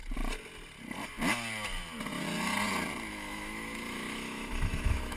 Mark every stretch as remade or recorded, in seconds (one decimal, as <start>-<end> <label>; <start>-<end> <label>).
0.0-3.1 recorded; 3.1-5.2 remade